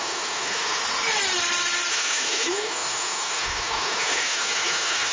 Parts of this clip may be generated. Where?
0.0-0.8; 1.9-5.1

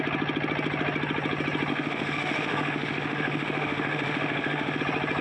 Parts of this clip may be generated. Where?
1.7-4.8

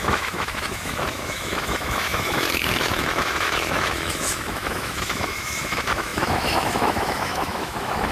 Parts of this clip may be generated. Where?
0.0-8.1

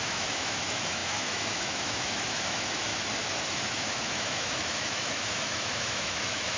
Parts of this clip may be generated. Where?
0.0-2.9; 3.5-6.6

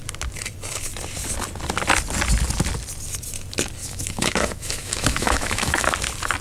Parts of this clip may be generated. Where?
3.8-5.9

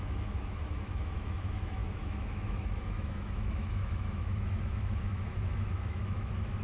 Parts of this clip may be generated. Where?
0.0-6.6

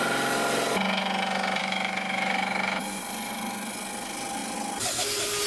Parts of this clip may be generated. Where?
1.6-3.0